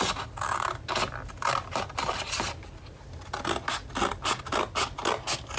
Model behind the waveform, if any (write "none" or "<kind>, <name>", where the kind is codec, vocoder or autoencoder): none